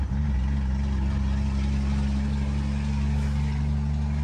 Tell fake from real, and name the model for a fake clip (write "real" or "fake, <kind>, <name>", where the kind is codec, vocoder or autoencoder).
real